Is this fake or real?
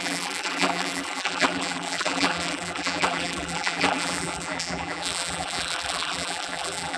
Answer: fake